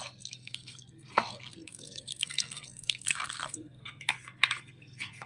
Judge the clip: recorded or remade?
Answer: remade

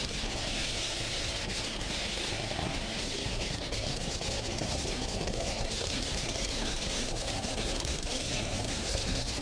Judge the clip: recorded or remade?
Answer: remade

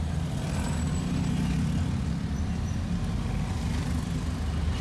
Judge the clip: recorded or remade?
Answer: recorded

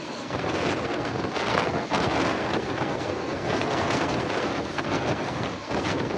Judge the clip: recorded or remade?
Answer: remade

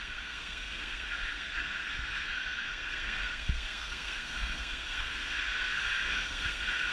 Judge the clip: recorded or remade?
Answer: remade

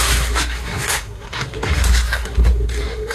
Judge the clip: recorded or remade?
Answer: remade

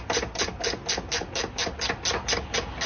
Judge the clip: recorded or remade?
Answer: recorded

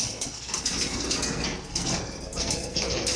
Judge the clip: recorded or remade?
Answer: remade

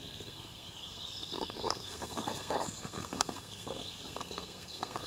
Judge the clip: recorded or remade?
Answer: remade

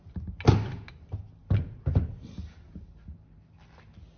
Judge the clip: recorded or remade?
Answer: recorded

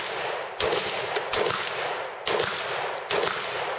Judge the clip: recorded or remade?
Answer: recorded